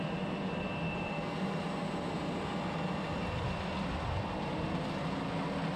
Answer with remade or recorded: recorded